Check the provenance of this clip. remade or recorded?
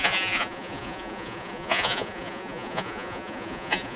remade